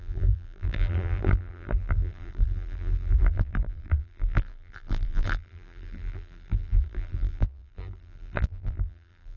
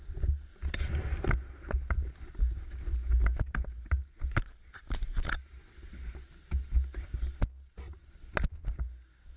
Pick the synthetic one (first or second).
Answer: first